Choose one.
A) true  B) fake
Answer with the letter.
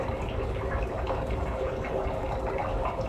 B